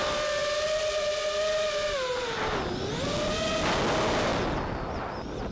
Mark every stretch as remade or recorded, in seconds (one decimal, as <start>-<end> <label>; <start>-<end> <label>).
0.0-5.5 recorded